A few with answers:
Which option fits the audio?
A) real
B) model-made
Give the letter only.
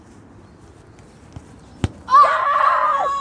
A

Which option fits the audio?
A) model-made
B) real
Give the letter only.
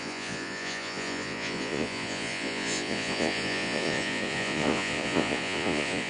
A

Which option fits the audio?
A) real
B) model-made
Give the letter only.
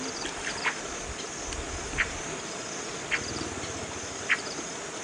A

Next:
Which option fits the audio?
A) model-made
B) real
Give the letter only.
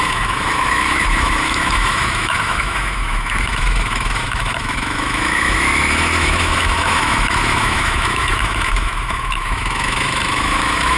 A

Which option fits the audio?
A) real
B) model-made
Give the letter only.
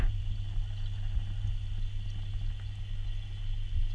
A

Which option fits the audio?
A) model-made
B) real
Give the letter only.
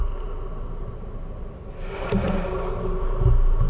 B